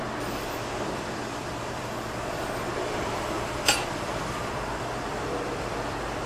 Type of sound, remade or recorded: remade